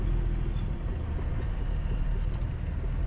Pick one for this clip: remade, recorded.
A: recorded